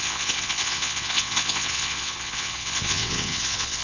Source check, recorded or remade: remade